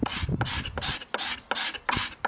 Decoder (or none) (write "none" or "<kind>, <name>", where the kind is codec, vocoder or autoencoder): none